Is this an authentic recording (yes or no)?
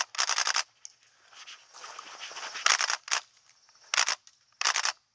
yes